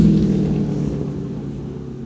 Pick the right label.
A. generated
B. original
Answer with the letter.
B